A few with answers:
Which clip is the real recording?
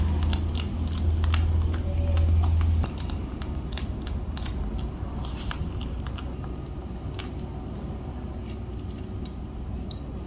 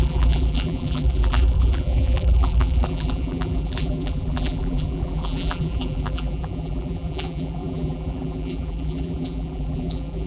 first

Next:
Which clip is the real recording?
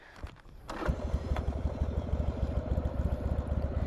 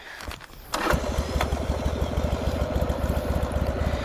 second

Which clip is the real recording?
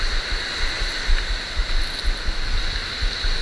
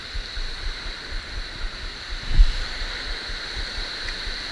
first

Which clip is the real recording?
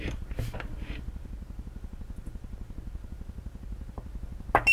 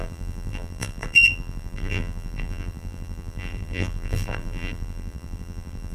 first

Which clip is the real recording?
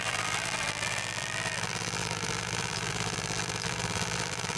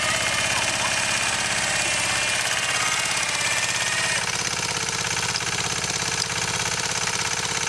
second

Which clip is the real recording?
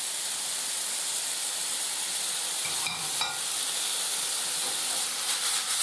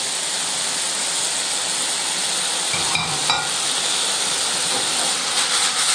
second